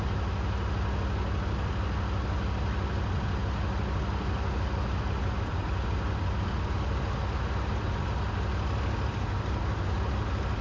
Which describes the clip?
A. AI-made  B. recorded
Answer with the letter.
B